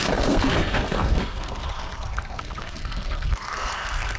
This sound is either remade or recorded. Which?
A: remade